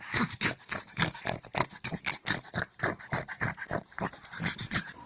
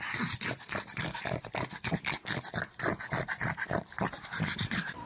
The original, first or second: second